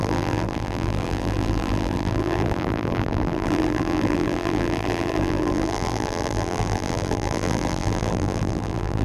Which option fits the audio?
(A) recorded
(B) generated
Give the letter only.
B